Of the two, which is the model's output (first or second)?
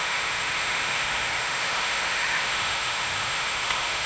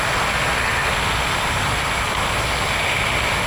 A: first